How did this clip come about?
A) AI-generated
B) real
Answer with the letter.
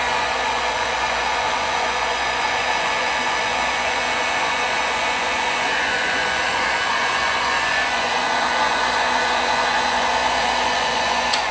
A